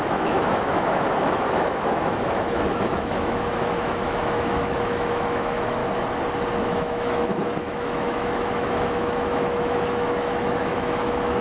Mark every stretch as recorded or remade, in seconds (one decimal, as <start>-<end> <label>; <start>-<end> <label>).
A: 0.0-5.8 remade; 5.8-6.6 recorded; 6.6-11.4 remade